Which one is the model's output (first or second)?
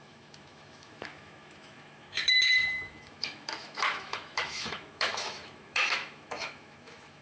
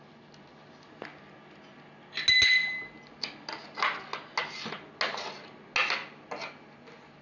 first